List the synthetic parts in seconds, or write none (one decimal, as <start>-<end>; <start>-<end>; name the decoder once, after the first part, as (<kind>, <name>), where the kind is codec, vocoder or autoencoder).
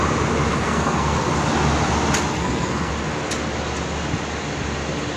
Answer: 0.5-1.3 (codec, SNAC); 2.3-2.9